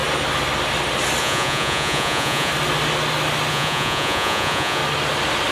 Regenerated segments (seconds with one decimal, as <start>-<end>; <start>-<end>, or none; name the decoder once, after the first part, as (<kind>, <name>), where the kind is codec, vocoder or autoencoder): 1.2-2.5 (vocoder, Vocos); 3.5-4.8

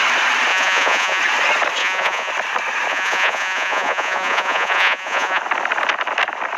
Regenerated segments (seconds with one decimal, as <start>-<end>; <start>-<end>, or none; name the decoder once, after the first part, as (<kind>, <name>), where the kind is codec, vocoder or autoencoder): 0.5-1.2 (vocoder, Vocos); 1.8-2.3; 2.9-5.4

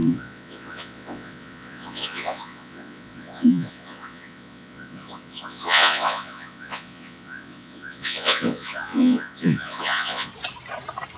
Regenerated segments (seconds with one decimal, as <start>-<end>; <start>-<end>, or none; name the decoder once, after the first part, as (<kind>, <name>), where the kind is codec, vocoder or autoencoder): 0.0-10.3 (vocoder, Vocos)

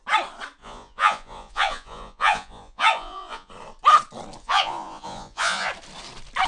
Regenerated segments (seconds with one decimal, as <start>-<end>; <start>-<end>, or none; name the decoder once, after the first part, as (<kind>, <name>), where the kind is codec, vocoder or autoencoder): 0.6-3.5 (vocoder, Vocos); 4.4-5.7

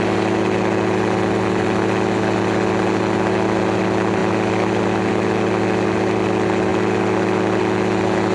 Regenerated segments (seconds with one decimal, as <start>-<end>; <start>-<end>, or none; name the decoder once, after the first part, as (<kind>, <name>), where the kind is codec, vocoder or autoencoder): none